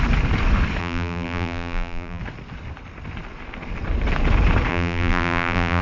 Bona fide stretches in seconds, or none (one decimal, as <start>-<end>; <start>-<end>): 0.0-0.8; 2.2-4.7

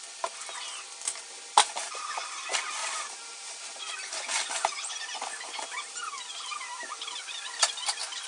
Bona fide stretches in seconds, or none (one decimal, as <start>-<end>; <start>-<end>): 0.0-2.8; 3.9-6.1; 7.3-8.3

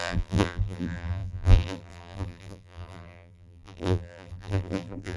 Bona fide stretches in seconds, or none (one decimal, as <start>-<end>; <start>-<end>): none

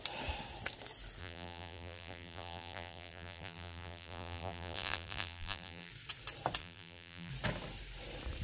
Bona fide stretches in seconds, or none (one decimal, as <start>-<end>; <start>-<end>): 0.0-1.2; 5.9-6.6; 7.3-8.4

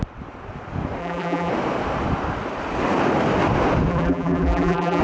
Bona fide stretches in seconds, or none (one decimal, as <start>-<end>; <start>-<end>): 0.0-1.0; 1.5-3.9